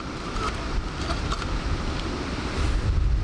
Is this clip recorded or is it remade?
recorded